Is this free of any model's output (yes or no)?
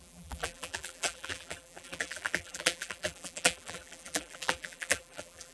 no